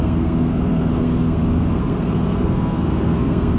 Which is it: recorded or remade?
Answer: remade